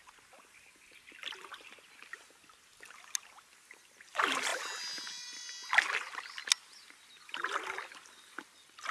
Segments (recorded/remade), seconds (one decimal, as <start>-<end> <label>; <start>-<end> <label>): 0.0-8.9 recorded